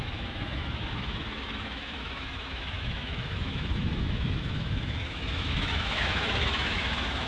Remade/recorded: remade